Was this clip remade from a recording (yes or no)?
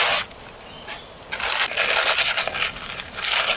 no